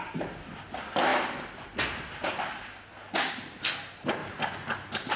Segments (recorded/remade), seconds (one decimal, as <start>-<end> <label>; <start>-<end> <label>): 0.0-5.2 recorded